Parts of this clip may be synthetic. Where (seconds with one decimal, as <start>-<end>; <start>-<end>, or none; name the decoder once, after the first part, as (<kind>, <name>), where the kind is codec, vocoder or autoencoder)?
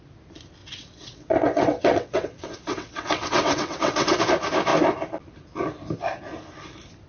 0.6-4.2 (vocoder, WaveNeXt)